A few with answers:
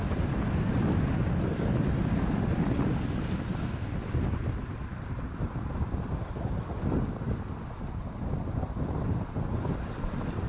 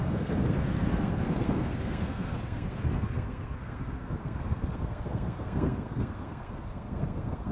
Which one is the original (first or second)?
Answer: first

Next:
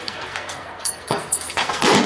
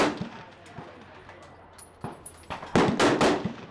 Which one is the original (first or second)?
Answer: second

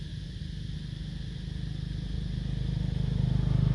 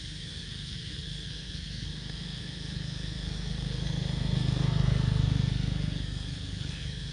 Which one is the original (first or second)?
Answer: first